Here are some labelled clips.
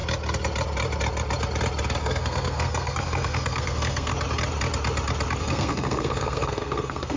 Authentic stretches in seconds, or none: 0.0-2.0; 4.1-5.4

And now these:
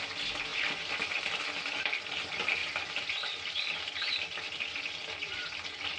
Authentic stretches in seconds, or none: 0.0-0.5; 1.3-2.6; 4.8-6.0

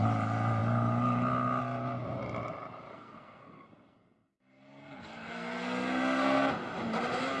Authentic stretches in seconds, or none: 0.0-2.9; 6.5-7.4

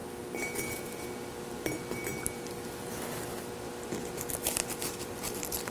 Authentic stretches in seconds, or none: 0.0-5.7

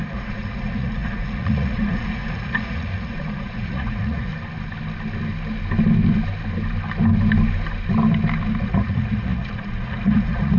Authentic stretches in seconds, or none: 4.3-8.6

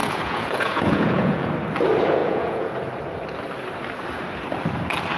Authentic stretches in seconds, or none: 1.5-2.2; 2.7-5.2